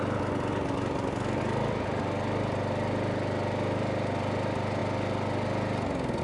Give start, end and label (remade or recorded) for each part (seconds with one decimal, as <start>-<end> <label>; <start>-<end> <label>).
0.0-6.2 recorded